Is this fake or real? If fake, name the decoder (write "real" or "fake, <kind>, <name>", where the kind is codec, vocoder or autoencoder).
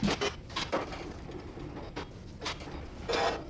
real